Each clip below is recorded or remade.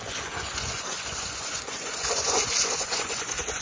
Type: remade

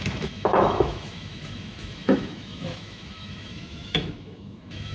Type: remade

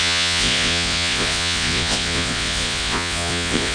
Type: remade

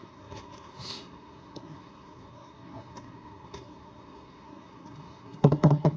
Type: remade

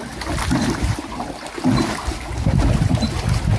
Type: recorded